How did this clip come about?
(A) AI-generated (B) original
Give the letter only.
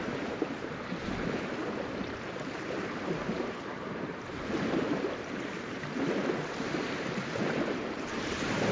A